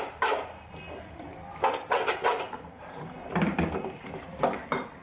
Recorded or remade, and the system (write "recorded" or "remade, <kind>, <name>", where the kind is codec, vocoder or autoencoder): recorded